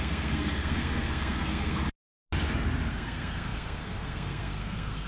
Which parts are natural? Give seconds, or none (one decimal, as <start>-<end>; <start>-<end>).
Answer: 1.8-2.9